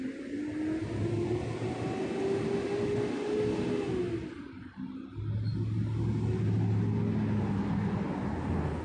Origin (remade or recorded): recorded